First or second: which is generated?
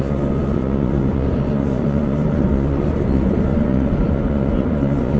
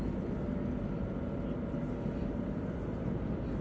first